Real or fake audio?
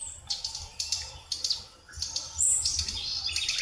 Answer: real